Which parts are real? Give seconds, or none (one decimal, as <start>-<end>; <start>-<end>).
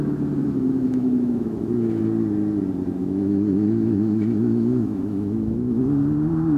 0.0-0.4; 2.0-3.0; 5.8-6.6